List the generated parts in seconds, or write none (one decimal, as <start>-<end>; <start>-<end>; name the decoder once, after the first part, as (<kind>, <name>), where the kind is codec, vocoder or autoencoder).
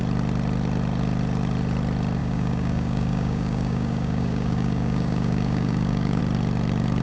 2.2-6.2 (codec, DAC)